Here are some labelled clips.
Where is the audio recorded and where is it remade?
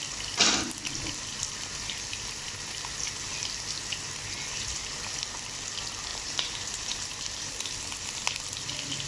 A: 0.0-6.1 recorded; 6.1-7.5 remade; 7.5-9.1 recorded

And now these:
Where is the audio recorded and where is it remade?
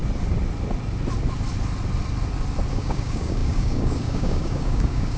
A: 0.0-2.7 recorded; 2.7-5.2 remade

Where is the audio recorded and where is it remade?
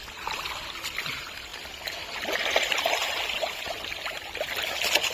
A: 0.0-5.1 recorded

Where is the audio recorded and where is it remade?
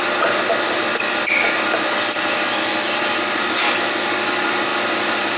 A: 0.0-5.4 recorded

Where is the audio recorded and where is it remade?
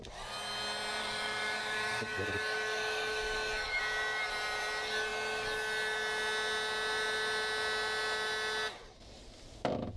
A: 0.0-1.0 recorded; 1.0-3.8 remade; 3.8-10.0 recorded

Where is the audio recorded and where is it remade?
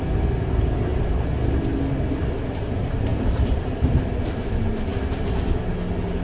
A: 0.0-3.1 recorded; 3.1-4.3 remade; 4.3-6.2 recorded